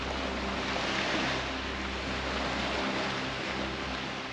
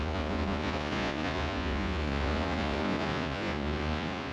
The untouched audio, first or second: first